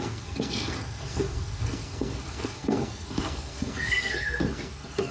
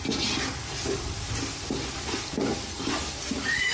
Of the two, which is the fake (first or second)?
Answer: first